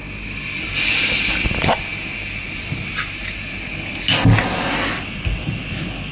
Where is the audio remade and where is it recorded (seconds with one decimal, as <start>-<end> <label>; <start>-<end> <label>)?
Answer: 0.0-6.1 recorded